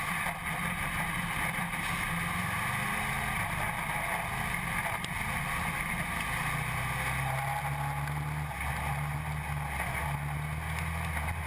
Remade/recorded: recorded